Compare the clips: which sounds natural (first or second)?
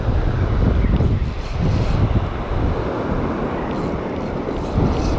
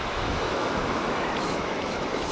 first